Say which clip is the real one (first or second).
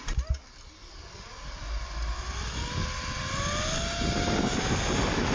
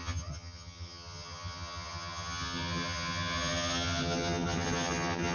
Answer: first